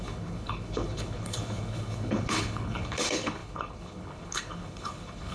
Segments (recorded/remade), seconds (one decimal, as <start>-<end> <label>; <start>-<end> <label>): 0.0-5.3 remade